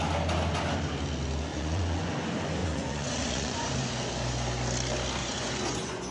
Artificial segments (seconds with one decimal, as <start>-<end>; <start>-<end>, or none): 1.5-2.1; 2.6-3.8; 5.2-6.1